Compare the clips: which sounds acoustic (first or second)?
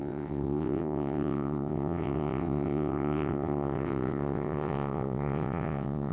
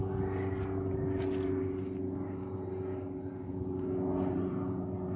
second